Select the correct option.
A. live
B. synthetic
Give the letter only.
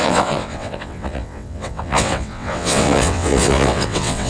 B